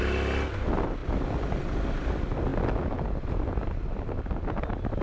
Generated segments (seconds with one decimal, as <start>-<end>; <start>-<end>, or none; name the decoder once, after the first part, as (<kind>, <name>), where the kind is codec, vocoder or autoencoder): none